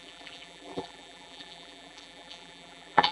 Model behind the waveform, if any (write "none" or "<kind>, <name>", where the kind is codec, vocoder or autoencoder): vocoder, BigVGAN v2